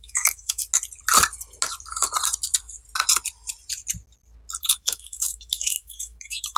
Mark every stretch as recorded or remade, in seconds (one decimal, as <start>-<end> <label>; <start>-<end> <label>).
0.0-0.6 remade; 0.6-4.6 recorded; 4.6-6.6 remade